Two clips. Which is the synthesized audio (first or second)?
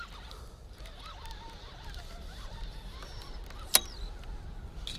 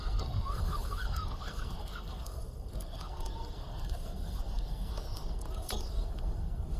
second